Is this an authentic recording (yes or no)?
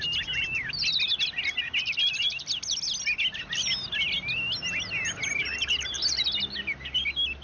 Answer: yes